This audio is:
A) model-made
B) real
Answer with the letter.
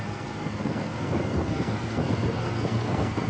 A